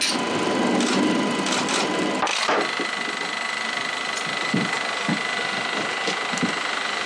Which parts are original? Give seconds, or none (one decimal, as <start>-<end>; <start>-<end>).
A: 0.0-7.1